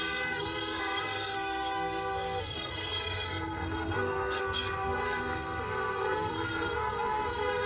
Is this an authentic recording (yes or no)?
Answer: no